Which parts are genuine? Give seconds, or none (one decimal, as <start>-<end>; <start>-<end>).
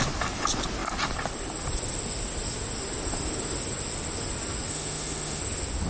0.0-4.7; 5.4-5.9